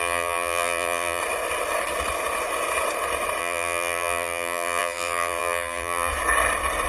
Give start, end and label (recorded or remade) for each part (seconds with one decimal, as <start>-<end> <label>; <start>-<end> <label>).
0.0-1.2 remade; 1.2-3.4 recorded; 3.4-6.1 remade; 6.1-6.9 recorded